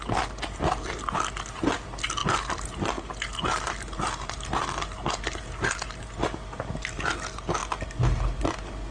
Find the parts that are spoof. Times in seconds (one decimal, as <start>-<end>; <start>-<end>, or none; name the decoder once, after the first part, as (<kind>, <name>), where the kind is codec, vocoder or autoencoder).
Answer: none